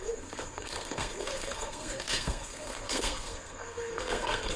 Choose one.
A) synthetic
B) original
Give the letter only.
A